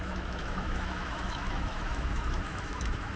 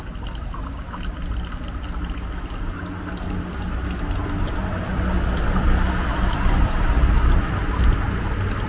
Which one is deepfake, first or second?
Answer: first